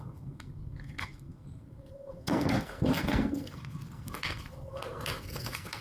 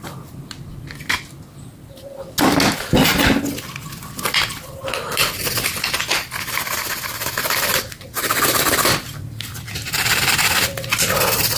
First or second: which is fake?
first